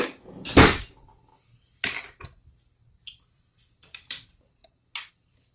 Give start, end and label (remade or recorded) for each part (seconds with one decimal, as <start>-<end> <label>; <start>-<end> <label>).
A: 0.0-1.3 remade; 1.3-2.9 recorded; 2.9-4.6 remade; 4.6-5.1 recorded; 5.1-5.5 remade